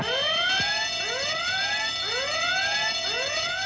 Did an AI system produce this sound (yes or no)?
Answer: no